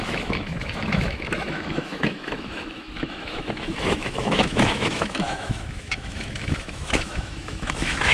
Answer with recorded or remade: remade